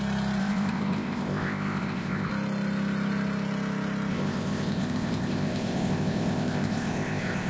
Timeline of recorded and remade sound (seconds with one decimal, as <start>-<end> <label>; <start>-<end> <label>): 0.0-0.4 recorded; 0.4-2.3 remade; 2.3-4.1 recorded; 4.1-7.5 remade